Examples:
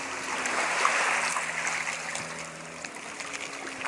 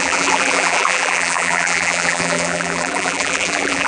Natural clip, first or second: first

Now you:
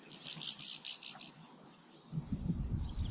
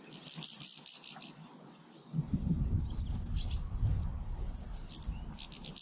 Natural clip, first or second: second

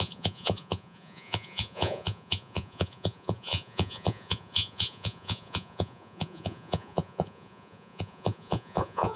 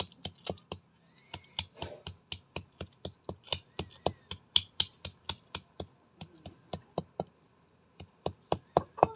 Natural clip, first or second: second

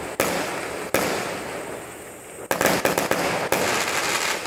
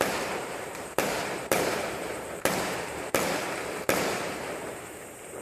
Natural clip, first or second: first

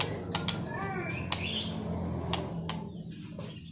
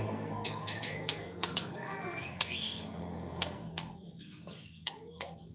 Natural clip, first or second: first